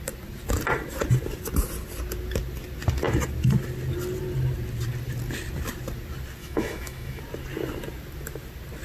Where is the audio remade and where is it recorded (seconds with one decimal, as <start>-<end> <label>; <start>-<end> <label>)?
0.0-6.4 recorded; 6.4-7.2 remade; 7.2-8.8 recorded